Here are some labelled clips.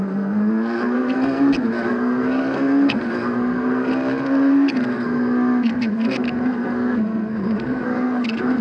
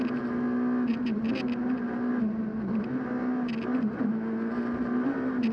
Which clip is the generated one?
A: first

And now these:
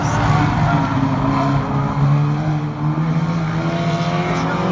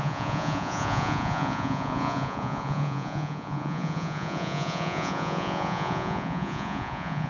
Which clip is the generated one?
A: second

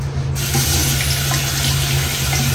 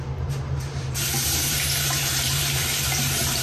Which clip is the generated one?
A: second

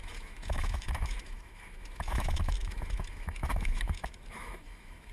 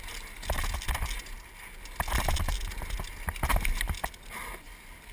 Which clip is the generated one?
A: first